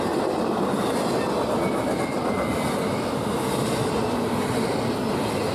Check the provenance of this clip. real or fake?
real